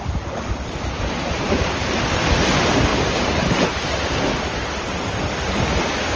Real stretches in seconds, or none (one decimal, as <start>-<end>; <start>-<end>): 0.0-1.2; 1.9-2.9; 4.2-6.2